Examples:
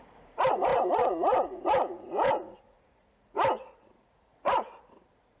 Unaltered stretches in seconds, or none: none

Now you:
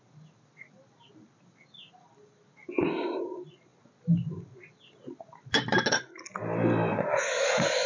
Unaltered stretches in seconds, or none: 0.0-7.9

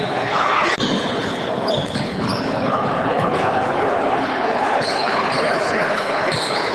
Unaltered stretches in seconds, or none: none